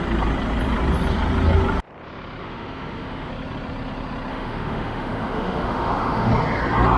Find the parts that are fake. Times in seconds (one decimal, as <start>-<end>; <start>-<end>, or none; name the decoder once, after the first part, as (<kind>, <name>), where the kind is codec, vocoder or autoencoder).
2.4-3.3 (autoencoder, DAC-VAE); 4.3-6.3